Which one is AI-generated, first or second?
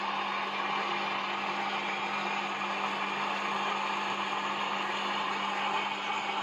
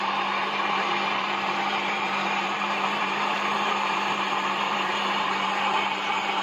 second